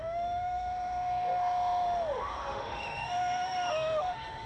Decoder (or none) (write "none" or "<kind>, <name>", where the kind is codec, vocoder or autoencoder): autoencoder, DAC-VAE